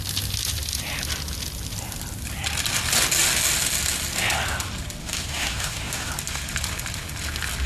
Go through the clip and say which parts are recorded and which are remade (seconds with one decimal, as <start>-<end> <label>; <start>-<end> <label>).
0.0-5.0 recorded; 5.0-6.1 remade; 6.1-7.7 recorded